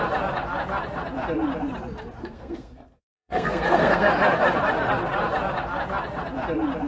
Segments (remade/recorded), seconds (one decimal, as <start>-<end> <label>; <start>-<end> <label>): 0.0-2.2 recorded; 2.2-4.1 remade; 4.1-6.9 recorded